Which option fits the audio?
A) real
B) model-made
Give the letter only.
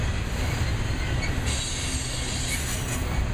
A